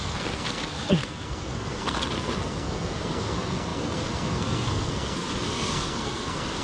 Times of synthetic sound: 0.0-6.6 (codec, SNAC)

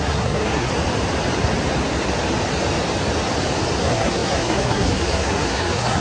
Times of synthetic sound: 0.0-0.7 (codec, SNAC); 3.8-6.0

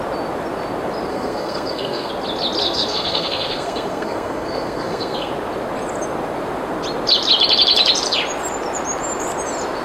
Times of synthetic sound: 1.1-2.1 (codec, SNAC); 2.6-5.3